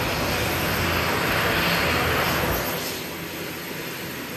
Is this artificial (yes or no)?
no